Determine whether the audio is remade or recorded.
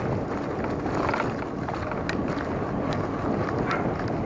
recorded